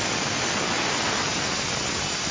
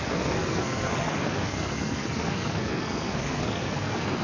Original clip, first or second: first